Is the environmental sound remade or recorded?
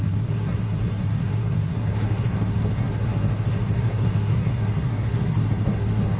remade